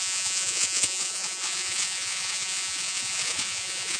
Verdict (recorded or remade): remade